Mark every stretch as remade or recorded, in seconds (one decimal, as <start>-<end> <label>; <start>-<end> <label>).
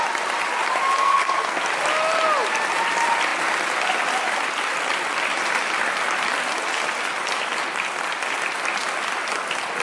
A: 0.0-1.0 recorded; 1.0-1.6 remade; 1.6-9.8 recorded